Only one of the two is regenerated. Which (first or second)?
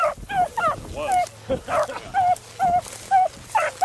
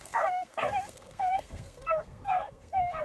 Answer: second